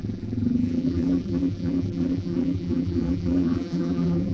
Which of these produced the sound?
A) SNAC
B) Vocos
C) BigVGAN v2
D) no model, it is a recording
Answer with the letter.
C